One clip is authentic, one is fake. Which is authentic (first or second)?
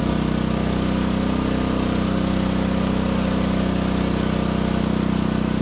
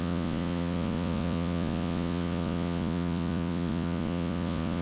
first